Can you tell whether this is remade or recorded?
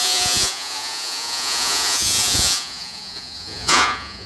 remade